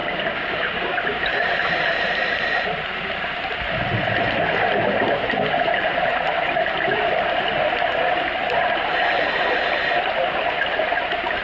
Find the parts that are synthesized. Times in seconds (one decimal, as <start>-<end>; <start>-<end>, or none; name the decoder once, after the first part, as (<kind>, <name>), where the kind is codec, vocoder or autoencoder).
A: 0.0-1.2 (codec, DAC)